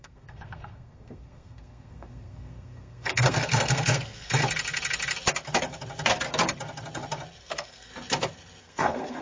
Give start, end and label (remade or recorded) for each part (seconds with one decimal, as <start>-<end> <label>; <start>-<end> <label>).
0.0-4.4 remade; 4.4-7.4 recorded; 7.4-7.9 remade; 7.9-8.6 recorded; 8.6-9.2 remade